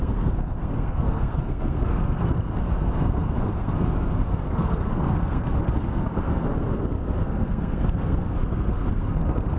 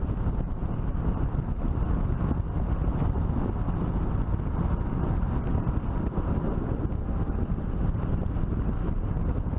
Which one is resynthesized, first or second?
first